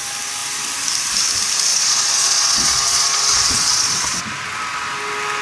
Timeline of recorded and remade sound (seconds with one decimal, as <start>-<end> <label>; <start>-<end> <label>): 0.0-1.7 recorded; 1.7-4.2 remade; 4.2-5.4 recorded